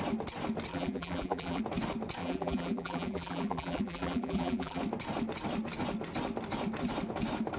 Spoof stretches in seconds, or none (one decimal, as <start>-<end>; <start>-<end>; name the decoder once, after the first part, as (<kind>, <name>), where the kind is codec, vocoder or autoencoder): 0.7-1.6 (vocoder, BigVGAN v2); 2.2-4.8